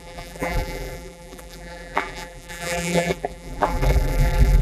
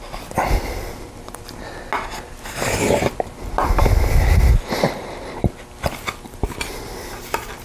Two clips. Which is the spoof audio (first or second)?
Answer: first